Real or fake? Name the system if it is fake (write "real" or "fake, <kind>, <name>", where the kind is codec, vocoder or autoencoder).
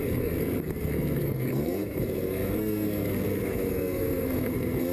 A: fake, codec, SNAC